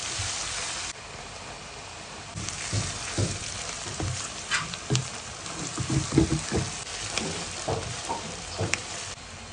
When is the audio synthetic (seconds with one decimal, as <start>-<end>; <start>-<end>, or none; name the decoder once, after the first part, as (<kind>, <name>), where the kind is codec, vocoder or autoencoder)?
0.0-6.3 (vocoder, BigVGAN v2); 7.2-9.5